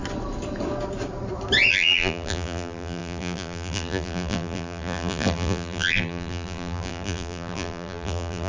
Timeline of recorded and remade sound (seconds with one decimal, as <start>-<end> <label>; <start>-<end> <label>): 0.0-1.7 recorded; 1.7-8.5 remade